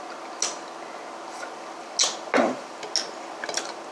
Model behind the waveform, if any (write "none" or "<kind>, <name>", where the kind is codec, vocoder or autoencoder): none